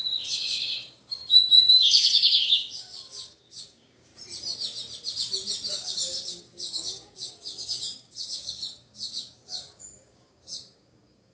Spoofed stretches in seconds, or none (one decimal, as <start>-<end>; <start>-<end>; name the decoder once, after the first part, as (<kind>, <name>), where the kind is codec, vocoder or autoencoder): 0.0-1.2 (codec, DAC); 1.7-4.1; 5.7-11.3